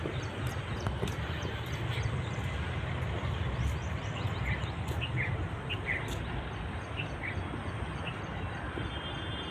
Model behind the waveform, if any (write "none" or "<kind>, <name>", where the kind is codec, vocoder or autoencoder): none